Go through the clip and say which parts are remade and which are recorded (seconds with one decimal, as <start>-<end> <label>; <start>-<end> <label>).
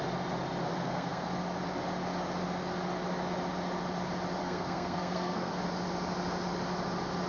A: 0.0-0.6 recorded; 0.6-1.3 remade; 1.3-4.4 recorded; 4.4-5.5 remade; 5.5-7.3 recorded